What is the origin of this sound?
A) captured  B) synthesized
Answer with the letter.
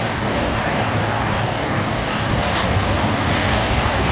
B